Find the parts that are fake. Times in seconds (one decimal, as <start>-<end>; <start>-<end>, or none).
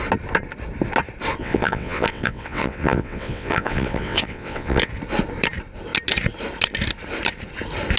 1.4-4.9